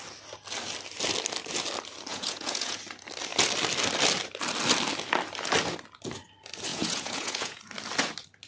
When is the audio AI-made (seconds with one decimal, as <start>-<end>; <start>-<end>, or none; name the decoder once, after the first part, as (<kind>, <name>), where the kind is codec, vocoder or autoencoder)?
2.1-2.8 (vocoder, Vocos); 6.7-7.6